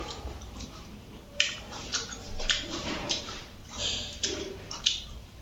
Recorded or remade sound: remade